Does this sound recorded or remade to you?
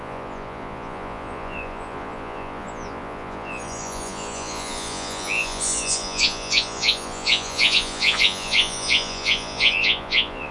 remade